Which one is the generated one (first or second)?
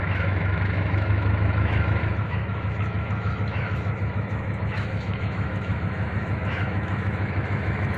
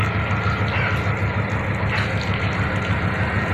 first